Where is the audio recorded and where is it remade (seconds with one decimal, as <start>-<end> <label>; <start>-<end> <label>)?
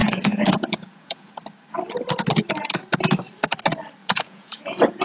0.0-1.3 remade; 1.3-4.0 recorded; 4.0-5.0 remade